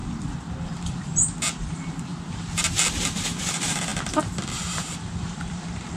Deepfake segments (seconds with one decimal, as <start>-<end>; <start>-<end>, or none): 0.0-2.1; 3.5-6.0